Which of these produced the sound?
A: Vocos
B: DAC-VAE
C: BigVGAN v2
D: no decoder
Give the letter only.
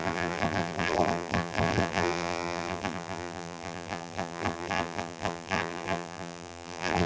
C